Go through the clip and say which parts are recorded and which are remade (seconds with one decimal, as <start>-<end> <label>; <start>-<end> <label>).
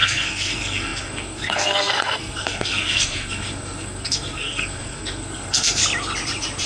0.0-5.8 remade; 5.8-6.7 recorded